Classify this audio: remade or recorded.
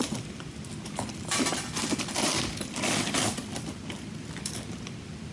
remade